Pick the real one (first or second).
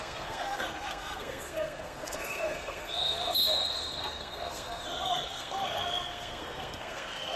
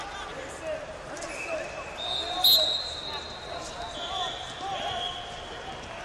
second